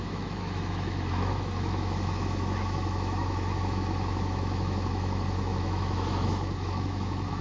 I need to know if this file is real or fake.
fake